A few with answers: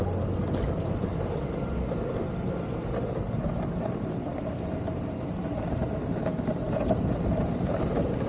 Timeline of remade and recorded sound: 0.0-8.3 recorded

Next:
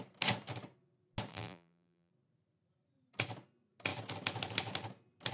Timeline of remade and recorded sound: 0.0-1.3 recorded; 1.3-2.1 remade; 2.1-5.3 recorded

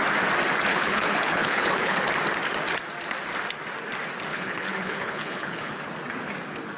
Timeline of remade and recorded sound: 0.0-0.7 recorded; 0.7-2.1 remade; 2.1-4.3 recorded; 4.3-5.8 remade; 5.8-6.8 recorded

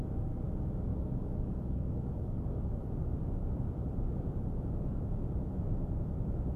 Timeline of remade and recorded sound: 0.0-0.9 recorded; 0.9-2.9 remade; 2.9-6.6 recorded

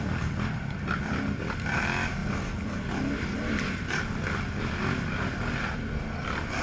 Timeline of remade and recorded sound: 0.0-6.6 recorded

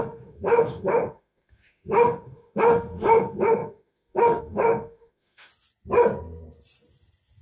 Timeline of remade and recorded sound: 0.0-5.5 remade; 5.5-7.4 recorded

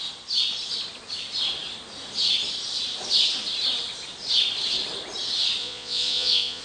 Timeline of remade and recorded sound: 0.0-5.6 recorded; 5.6-6.6 remade

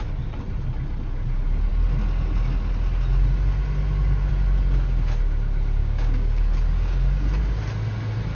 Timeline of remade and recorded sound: 0.0-5.8 recorded; 5.8-6.4 remade; 6.4-8.3 recorded